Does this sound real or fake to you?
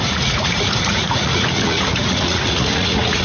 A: fake